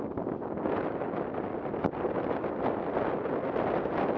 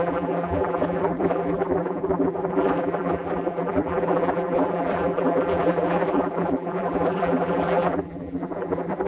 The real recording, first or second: first